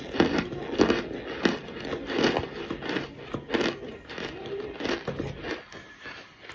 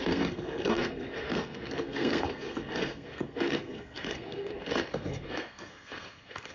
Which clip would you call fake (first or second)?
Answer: second